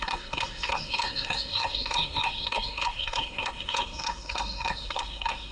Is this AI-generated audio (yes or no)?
yes